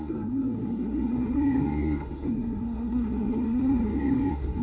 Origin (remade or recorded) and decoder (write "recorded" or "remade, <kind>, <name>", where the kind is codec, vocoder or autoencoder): remade, codec, SNAC